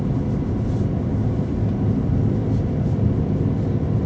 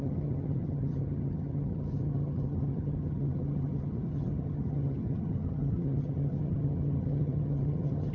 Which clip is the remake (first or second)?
second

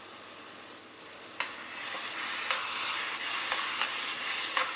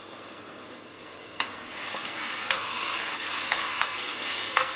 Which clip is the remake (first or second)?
second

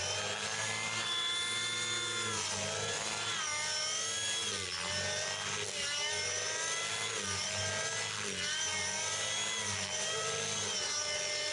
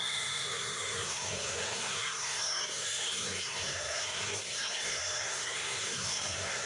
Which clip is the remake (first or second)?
second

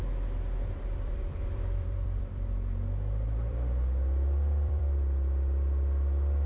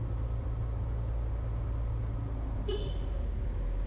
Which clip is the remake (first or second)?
first